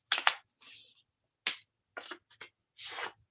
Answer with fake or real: real